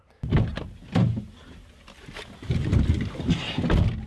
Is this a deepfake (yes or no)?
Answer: no